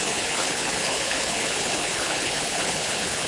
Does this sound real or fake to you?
fake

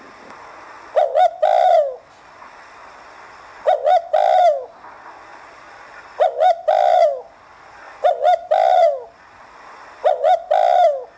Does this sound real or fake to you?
real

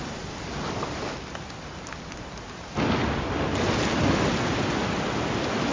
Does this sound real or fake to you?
real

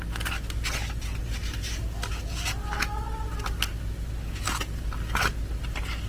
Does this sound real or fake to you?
real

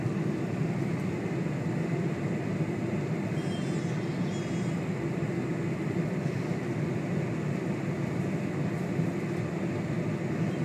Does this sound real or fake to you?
real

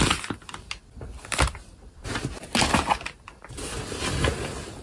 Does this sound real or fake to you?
real